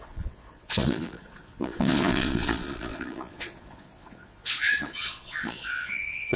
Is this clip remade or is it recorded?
remade